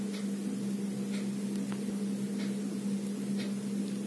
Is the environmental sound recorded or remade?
recorded